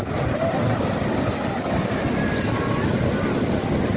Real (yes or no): yes